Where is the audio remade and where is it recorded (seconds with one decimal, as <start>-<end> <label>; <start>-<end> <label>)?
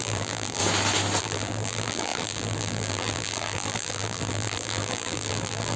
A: 0.0-0.6 remade; 0.6-1.2 recorded; 1.2-5.8 remade